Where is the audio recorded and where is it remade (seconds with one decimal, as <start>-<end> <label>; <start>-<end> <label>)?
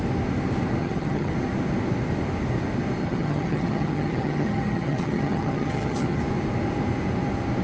0.0-0.8 recorded; 0.8-1.3 remade; 1.3-3.0 recorded; 3.0-6.2 remade; 6.2-7.6 recorded